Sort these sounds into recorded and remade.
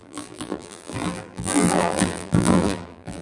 remade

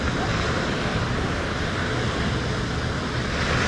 recorded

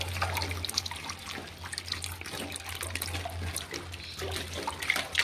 recorded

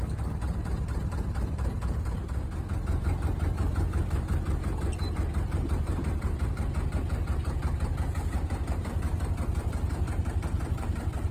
remade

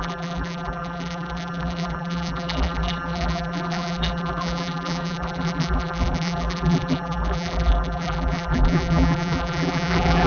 remade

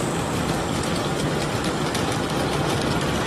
recorded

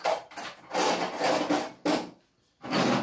recorded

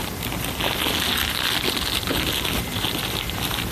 recorded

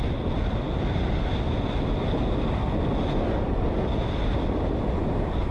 recorded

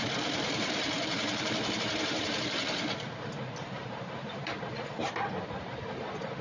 remade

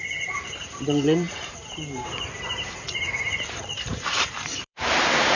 remade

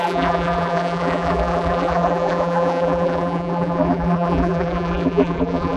remade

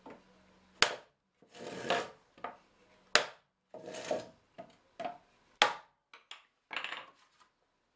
recorded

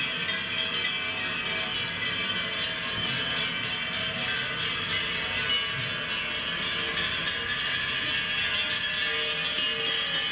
recorded